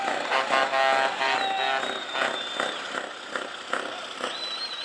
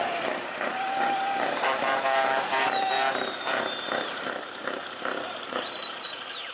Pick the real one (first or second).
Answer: first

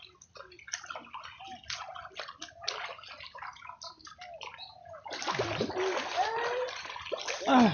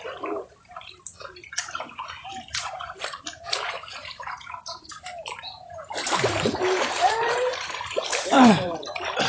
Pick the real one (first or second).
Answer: first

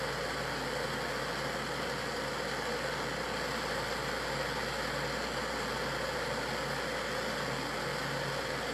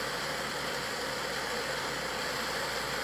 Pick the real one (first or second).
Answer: first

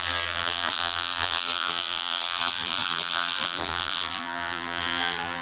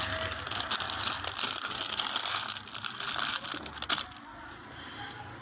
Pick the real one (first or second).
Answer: second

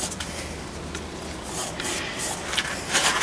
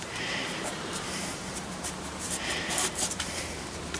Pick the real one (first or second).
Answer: first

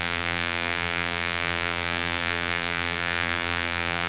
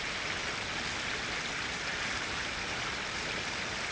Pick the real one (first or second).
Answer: second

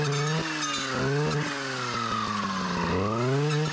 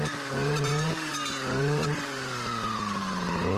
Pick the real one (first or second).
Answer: first